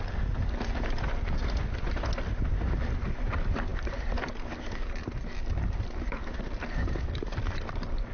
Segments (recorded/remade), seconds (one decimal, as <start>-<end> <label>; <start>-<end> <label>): 0.0-8.1 recorded